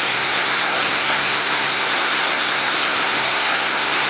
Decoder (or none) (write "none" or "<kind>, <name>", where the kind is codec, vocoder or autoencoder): codec, SNAC